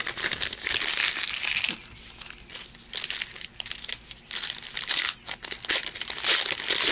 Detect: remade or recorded recorded